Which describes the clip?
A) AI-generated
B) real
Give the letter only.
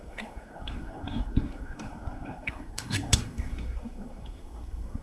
A